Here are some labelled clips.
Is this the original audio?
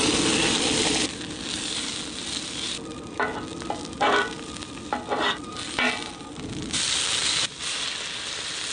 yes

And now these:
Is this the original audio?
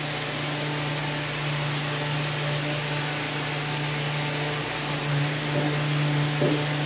yes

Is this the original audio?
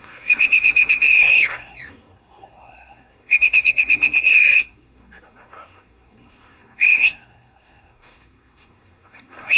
no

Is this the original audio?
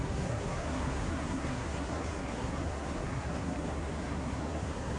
no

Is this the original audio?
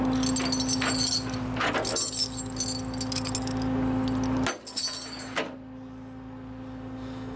yes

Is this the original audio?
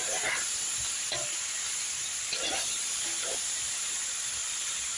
yes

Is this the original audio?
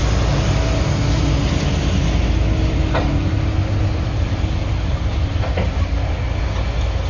yes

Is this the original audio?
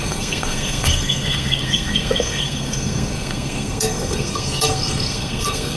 no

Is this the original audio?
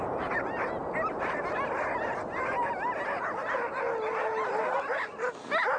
yes